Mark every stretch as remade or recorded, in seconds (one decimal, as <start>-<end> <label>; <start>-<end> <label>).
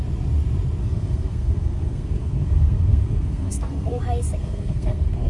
0.0-0.8 recorded; 0.8-4.0 remade; 4.0-4.4 recorded; 4.4-5.3 remade